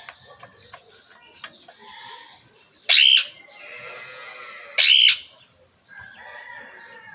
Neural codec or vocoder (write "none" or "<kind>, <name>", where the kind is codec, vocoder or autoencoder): none